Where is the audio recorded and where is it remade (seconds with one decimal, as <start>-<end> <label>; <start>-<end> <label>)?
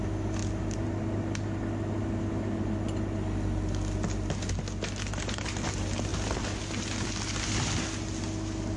0.0-8.8 recorded